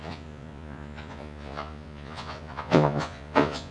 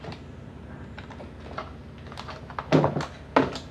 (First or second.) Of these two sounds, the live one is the second